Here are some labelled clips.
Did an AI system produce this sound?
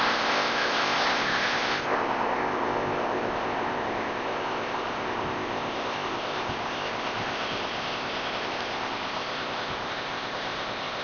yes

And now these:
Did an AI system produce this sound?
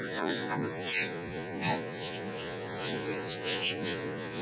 yes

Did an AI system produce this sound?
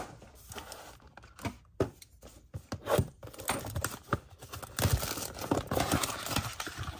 no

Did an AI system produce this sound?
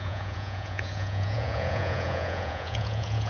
yes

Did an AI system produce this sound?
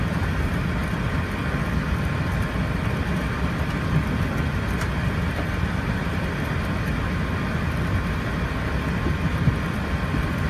no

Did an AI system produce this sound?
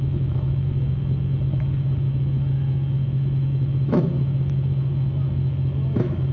yes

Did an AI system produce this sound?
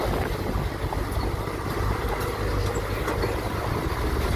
no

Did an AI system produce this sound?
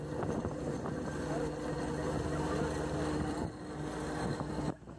no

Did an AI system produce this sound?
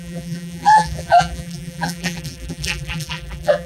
yes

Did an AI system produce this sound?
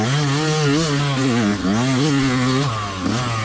no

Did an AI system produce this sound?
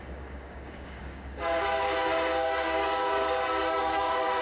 yes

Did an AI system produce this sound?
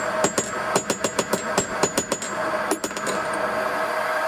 no